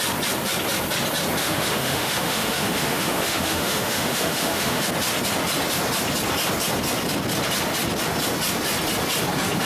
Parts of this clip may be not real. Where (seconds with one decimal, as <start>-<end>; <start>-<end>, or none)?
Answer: 1.4-4.9